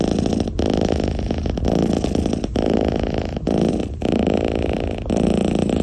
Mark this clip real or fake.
real